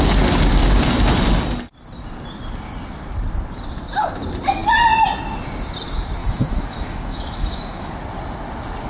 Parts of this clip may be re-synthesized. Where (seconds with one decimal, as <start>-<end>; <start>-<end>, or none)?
6.2-7.9